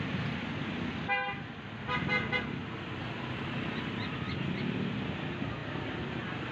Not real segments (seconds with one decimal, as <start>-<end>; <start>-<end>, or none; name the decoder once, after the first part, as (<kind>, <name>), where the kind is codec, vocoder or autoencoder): none